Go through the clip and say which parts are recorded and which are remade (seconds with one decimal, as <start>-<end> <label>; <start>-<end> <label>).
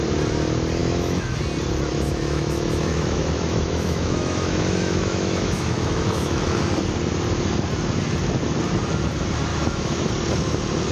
0.0-0.8 recorded; 0.8-1.4 remade; 1.4-1.9 recorded; 1.9-6.6 remade; 6.6-9.5 recorded; 9.5-10.1 remade; 10.1-10.9 recorded